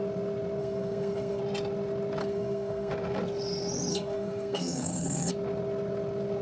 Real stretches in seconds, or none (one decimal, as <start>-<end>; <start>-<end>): 0.0-0.6; 1.4-2.2; 2.9-3.9; 5.3-6.4

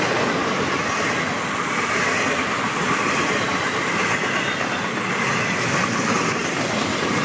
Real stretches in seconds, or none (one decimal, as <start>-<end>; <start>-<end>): 0.0-0.4; 4.7-7.2

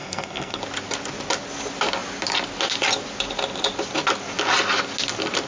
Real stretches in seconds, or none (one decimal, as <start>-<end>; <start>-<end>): 0.6-5.5

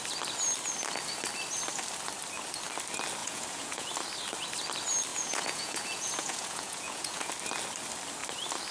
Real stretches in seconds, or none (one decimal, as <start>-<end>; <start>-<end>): 0.0-3.2; 3.9-5.1; 7.3-8.7

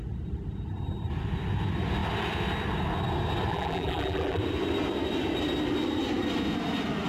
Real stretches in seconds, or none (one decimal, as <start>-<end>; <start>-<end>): 0.0-3.5; 4.4-7.1

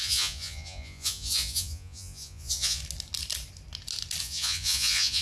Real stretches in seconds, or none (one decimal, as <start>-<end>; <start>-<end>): 2.8-4.2

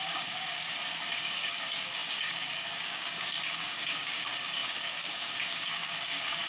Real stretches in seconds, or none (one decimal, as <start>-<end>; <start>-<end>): 0.7-1.2